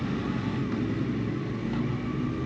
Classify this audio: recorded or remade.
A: recorded